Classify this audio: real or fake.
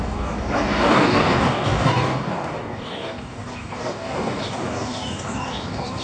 fake